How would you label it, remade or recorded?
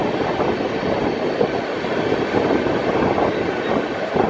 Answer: recorded